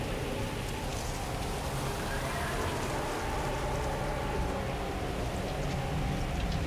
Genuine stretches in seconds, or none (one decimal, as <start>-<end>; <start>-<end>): 0.0-6.7